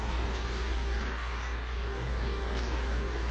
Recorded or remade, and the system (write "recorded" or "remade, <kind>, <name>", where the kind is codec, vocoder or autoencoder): remade, codec, DAC